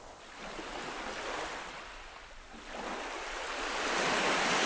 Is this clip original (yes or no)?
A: yes